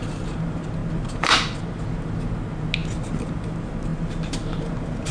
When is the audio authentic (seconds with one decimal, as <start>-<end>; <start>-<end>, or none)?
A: 0.0-5.1